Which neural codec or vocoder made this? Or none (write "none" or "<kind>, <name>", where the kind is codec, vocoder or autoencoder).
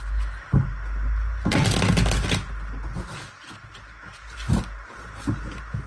none